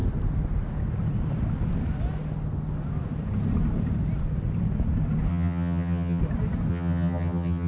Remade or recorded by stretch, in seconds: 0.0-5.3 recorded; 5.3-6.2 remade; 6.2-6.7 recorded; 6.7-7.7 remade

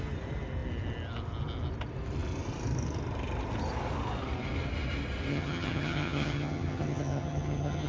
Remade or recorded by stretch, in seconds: 0.0-5.3 recorded; 5.3-7.9 remade

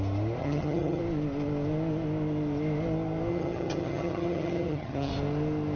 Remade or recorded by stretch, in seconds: 0.0-0.4 recorded; 0.4-1.0 remade; 1.0-3.3 recorded; 3.3-5.1 remade; 5.1-5.8 recorded

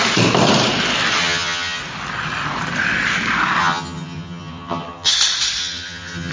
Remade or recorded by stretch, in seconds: 0.0-1.2 recorded; 1.2-1.8 remade; 1.8-3.6 recorded; 3.6-5.1 remade; 5.1-5.6 recorded; 5.6-6.3 remade